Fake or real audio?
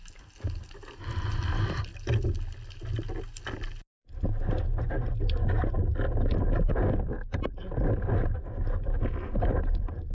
real